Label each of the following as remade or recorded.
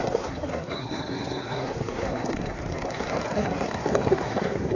remade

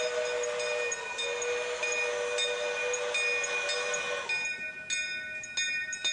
recorded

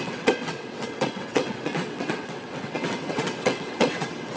remade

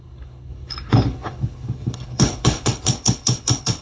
remade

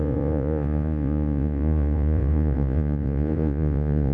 remade